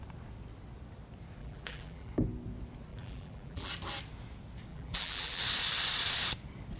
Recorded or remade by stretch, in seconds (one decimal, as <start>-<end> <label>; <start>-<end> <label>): 0.0-1.4 recorded; 1.4-2.1 remade; 2.1-2.9 recorded; 2.9-3.7 remade; 3.7-4.7 recorded; 4.7-5.4 remade; 5.4-6.8 recorded